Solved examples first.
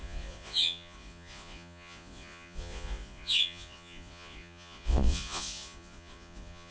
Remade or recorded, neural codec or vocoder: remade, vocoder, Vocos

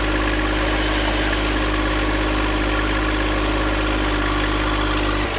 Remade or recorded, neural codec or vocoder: recorded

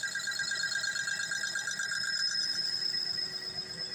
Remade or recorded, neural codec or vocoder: recorded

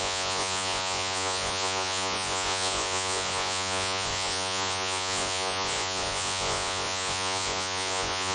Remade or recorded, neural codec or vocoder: remade, vocoder, Vocos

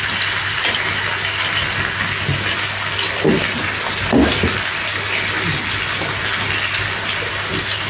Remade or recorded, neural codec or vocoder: recorded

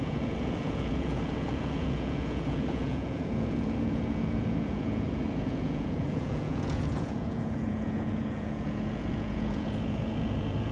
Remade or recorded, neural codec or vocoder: remade, vocoder, Vocos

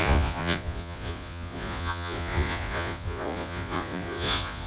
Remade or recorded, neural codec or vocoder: remade, vocoder, Vocos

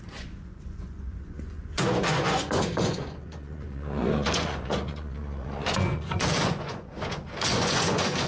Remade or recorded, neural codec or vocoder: remade, vocoder, Vocos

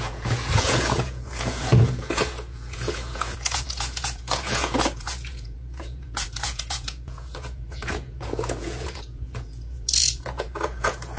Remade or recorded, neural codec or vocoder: remade, vocoder, Vocos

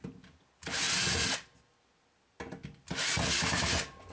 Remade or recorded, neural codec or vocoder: recorded